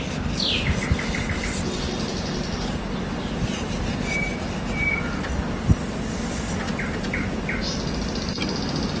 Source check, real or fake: real